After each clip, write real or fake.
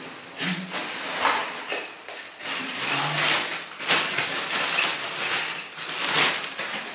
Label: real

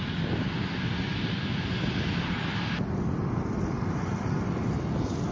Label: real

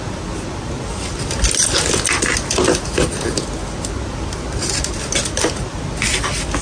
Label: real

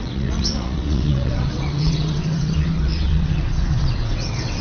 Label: fake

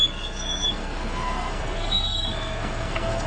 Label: fake